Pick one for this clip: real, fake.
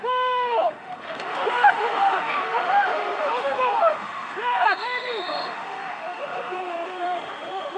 fake